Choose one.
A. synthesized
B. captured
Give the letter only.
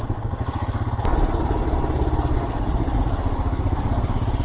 B